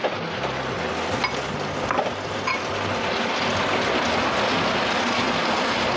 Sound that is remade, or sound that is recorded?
recorded